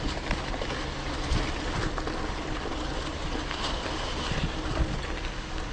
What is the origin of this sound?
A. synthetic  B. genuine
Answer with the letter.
B